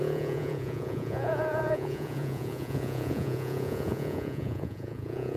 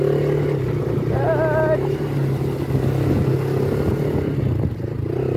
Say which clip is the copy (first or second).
first